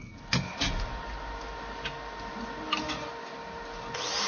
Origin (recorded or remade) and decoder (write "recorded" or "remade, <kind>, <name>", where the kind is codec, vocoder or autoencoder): recorded